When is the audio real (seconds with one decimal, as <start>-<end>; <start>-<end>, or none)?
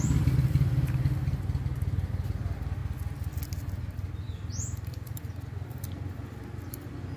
0.0-7.2